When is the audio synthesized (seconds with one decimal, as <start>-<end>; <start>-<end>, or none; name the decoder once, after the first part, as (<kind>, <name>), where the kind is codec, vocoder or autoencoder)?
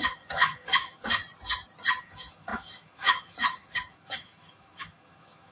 0.0-1.2 (autoencoder, DAC-VAE); 2.0-5.5